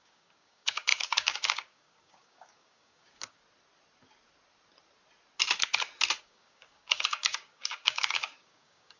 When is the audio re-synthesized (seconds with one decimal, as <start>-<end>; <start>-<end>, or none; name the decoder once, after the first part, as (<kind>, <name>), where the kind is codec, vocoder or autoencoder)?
0.0-3.4 (codec, DAC); 6.2-9.0